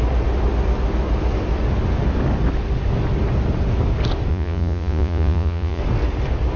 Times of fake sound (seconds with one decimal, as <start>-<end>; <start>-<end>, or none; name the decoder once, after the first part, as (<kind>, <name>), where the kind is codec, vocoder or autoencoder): 4.3-5.8 (vocoder, Vocos)